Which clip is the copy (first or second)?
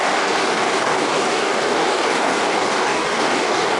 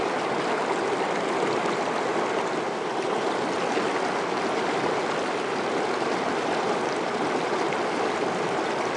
first